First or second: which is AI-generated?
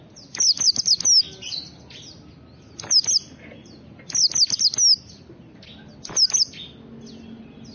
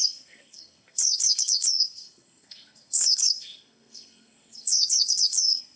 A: second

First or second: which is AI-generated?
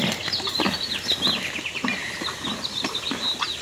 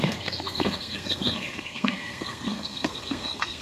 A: second